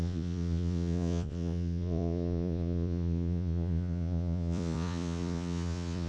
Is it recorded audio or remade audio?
remade